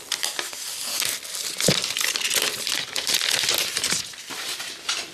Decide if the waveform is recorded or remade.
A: recorded